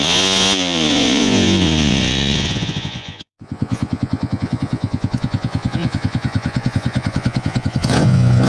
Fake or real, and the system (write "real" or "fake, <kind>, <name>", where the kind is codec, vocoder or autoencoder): fake, vocoder, Vocos